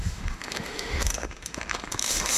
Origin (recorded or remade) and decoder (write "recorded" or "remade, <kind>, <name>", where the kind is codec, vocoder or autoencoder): remade, autoencoder, DAC-VAE